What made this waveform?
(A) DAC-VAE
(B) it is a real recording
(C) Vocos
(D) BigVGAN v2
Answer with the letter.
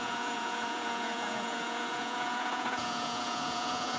C